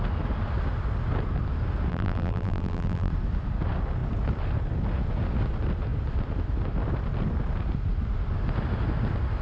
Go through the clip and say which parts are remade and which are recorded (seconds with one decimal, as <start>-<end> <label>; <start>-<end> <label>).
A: 0.0-1.9 recorded; 1.9-3.1 remade; 3.1-9.4 recorded